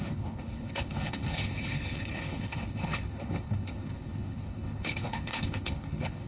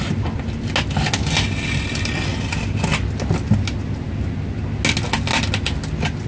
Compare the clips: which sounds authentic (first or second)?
second